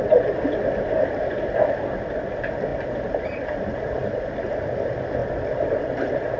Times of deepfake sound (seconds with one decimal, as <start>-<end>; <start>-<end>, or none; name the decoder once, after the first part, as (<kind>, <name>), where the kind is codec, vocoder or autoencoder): 2.7-4.2 (vocoder, BigVGAN v2); 5.2-5.9